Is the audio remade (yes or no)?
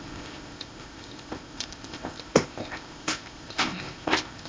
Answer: yes